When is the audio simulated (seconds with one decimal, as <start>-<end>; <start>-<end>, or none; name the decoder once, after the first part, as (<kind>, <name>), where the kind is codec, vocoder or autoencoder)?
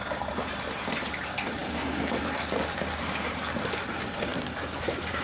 none